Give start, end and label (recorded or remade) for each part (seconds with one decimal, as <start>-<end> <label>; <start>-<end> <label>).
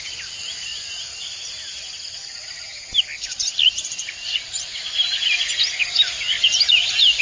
0.0-0.7 remade; 0.7-1.8 recorded; 1.8-2.4 remade; 2.4-6.7 recorded; 6.7-7.2 remade